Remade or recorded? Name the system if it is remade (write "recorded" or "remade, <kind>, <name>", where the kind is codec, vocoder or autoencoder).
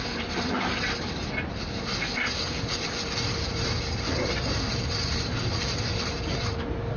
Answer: remade, vocoder, BigVGAN v2